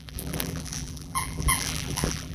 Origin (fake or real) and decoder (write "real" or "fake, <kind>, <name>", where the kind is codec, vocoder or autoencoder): fake, vocoder, BigVGAN v2